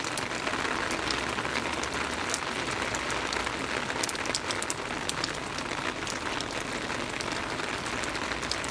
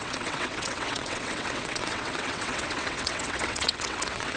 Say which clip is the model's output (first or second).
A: second